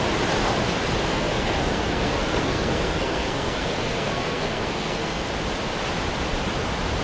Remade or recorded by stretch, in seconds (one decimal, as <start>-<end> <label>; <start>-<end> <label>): 0.0-1.1 recorded; 1.1-5.3 remade; 5.3-7.0 recorded